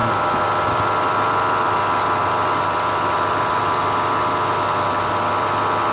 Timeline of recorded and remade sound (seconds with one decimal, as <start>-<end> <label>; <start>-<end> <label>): 0.0-1.8 remade; 1.8-2.2 recorded; 2.2-3.6 remade; 3.6-5.9 recorded